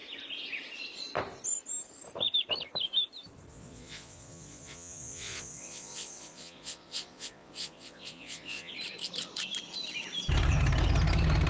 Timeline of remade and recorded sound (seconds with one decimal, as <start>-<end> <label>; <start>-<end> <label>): 0.0-3.5 recorded; 3.5-8.7 remade; 8.7-11.5 recorded

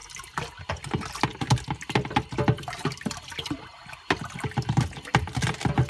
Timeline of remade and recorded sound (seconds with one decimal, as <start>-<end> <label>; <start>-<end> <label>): 0.0-5.9 recorded

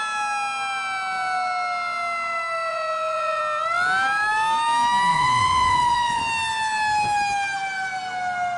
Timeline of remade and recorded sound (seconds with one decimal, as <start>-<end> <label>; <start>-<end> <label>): 0.0-2.7 recorded; 2.7-3.4 remade; 3.4-5.1 recorded; 5.1-6.2 remade; 6.2-8.6 recorded